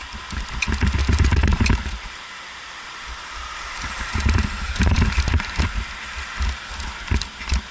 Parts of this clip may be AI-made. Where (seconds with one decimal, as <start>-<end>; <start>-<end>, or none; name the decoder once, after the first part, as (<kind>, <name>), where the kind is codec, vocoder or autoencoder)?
1.0-5.6 (vocoder, BigVGAN v2)